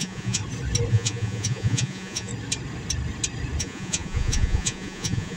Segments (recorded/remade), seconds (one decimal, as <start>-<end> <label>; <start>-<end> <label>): 0.0-0.4 remade; 0.4-0.9 recorded; 0.9-2.3 remade; 2.3-3.6 recorded; 3.6-5.4 remade